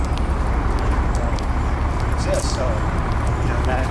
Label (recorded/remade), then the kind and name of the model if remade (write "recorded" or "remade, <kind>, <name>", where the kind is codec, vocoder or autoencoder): recorded